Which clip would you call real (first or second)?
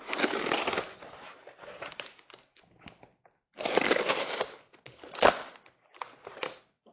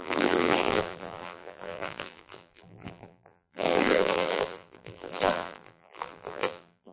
first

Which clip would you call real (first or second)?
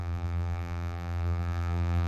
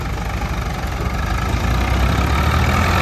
second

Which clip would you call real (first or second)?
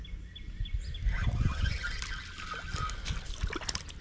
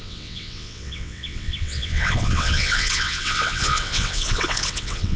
first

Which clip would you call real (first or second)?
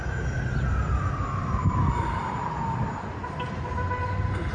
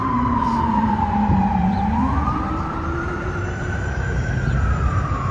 first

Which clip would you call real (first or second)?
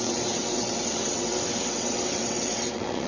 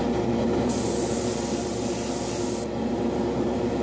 second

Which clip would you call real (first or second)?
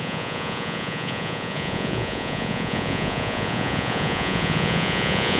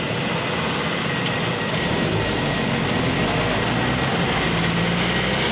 second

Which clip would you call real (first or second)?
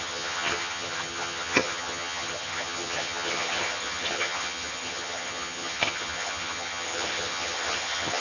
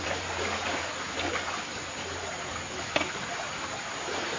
second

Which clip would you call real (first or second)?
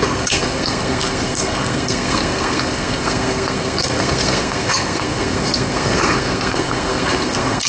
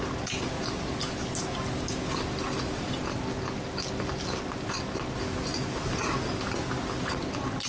second